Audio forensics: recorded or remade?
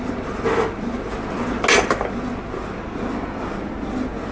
recorded